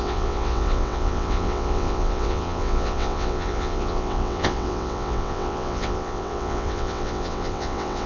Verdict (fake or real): fake